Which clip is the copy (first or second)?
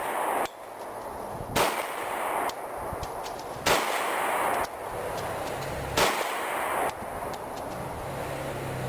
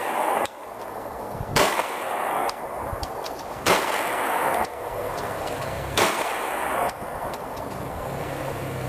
second